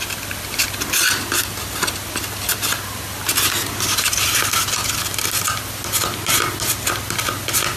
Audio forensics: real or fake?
real